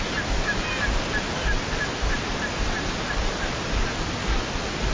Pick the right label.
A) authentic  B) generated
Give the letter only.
A